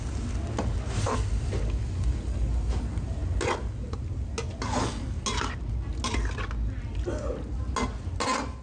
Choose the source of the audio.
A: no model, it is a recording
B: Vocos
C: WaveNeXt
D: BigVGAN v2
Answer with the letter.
A